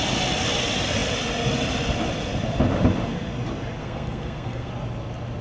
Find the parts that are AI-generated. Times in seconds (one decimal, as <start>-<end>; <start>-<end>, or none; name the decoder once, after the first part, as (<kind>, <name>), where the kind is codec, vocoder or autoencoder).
3.8-4.7 (codec, SNAC)